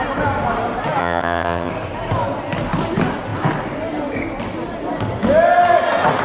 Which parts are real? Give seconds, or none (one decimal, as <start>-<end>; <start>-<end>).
0.0-1.0; 1.7-6.2